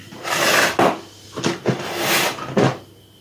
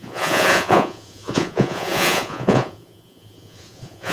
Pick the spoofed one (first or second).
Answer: second